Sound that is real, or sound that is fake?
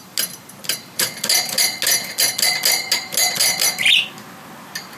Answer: real